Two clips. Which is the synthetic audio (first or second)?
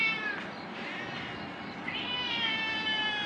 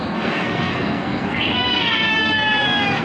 second